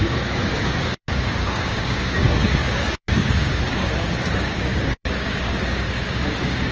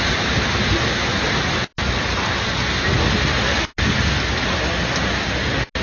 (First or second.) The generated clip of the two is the first